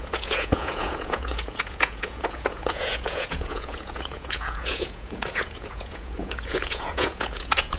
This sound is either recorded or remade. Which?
remade